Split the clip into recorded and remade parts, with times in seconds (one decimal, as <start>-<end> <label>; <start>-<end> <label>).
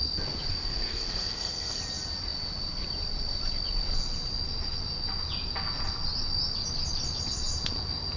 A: 0.0-0.5 recorded; 0.5-1.8 remade; 1.8-8.2 recorded